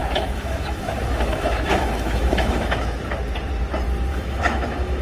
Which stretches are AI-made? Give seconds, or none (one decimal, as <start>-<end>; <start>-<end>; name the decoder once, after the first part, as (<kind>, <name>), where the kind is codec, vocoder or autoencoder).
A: 0.0-3.0 (autoencoder, DAC-VAE); 4.1-5.0